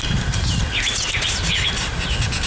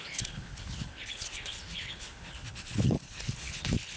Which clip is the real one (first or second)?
first